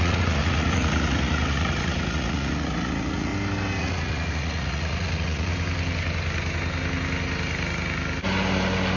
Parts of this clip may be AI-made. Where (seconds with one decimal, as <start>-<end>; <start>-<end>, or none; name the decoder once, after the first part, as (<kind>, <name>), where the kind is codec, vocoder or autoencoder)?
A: 0.0-3.3 (vocoder, Vocos); 3.8-5.5